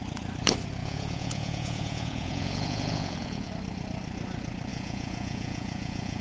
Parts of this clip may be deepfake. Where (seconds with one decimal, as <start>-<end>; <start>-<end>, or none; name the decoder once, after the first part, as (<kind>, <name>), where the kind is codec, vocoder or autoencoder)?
0.8-3.5 (vocoder, Vocos); 4.7-6.2